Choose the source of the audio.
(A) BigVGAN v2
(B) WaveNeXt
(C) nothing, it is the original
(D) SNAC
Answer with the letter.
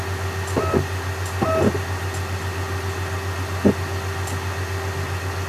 C